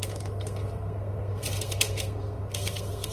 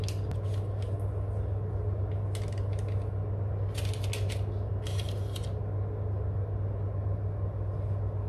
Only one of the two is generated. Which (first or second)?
first